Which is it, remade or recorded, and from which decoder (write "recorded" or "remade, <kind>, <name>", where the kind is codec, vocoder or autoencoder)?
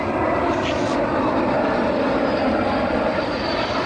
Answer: recorded